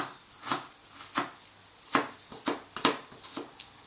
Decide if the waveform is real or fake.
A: real